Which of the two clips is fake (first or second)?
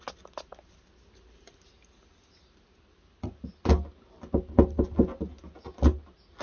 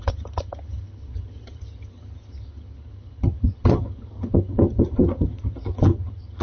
second